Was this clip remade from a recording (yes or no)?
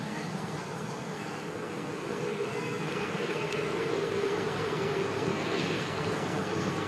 yes